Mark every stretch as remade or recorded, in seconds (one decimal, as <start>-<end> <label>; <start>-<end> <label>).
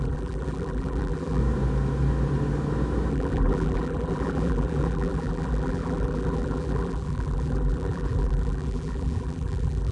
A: 0.0-1.4 remade; 1.4-3.1 recorded; 3.1-9.9 remade